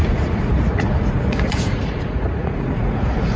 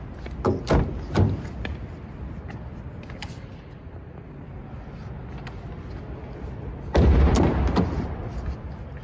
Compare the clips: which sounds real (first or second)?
second